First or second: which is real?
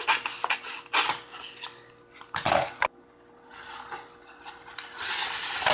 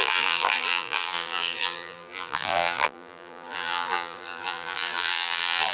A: first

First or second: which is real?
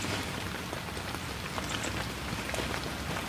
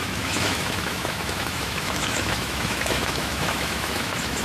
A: first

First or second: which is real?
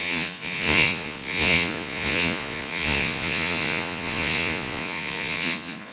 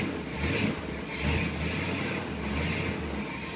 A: second